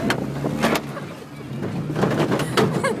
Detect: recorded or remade recorded